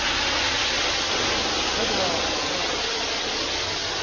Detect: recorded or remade recorded